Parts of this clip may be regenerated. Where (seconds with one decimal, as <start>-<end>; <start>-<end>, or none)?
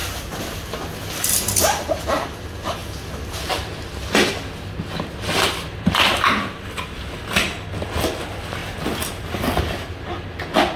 none